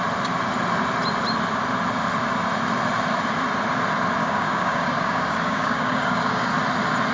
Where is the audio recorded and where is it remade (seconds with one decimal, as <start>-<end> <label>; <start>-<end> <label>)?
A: 0.0-4.2 recorded; 4.2-6.5 remade; 6.5-7.1 recorded